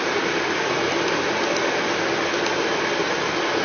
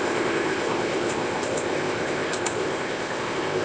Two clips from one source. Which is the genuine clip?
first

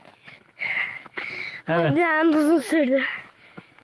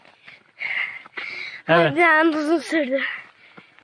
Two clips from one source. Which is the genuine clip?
second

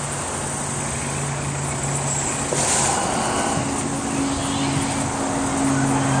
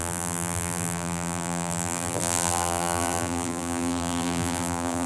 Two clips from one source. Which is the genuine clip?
first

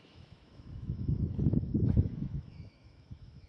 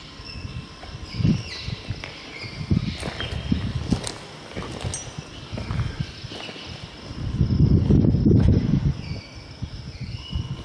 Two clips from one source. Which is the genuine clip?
second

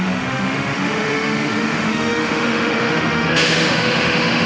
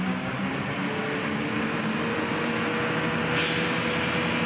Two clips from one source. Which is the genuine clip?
second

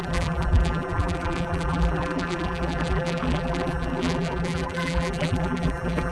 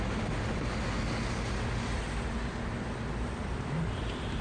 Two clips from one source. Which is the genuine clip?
second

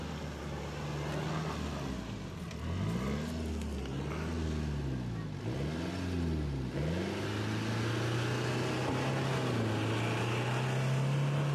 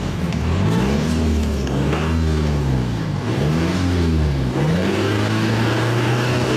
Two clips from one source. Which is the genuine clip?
first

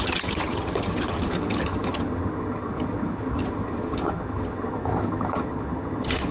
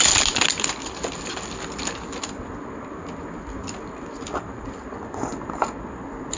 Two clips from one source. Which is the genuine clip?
second